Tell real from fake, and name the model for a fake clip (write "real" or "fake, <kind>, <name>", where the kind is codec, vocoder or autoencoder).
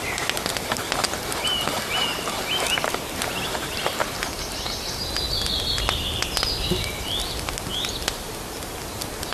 real